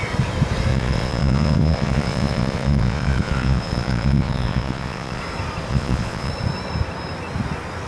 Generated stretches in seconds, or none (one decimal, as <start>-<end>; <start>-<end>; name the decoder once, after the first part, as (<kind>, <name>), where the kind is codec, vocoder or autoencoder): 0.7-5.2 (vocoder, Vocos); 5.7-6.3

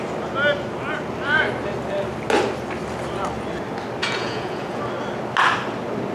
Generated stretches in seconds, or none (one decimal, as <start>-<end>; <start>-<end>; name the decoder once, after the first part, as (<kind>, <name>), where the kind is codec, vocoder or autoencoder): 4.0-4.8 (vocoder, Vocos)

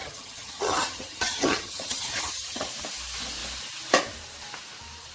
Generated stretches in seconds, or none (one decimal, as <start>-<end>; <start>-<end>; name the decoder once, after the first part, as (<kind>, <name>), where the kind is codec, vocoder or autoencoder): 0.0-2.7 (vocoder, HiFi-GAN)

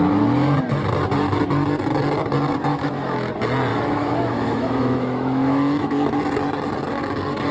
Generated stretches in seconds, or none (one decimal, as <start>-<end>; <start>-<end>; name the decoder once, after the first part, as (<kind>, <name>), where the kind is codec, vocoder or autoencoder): 2.7-3.3 (autoencoder, DAC-VAE); 3.7-6.2